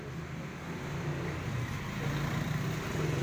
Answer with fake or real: real